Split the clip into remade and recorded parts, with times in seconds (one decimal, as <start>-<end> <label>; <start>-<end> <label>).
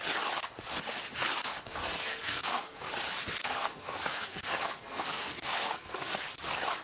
0.0-1.4 recorded; 1.4-2.8 remade; 2.8-3.4 recorded; 3.4-6.2 remade; 6.2-6.8 recorded